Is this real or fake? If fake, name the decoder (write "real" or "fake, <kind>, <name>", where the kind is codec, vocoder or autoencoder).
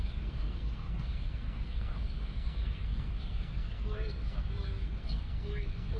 fake, codec, SNAC